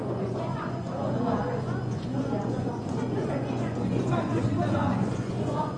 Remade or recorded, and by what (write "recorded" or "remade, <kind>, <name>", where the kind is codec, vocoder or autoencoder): remade, vocoder, Vocos